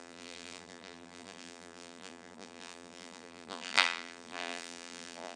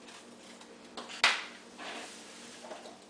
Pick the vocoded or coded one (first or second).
first